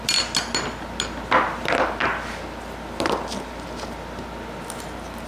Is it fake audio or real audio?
real